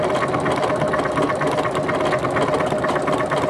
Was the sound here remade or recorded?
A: recorded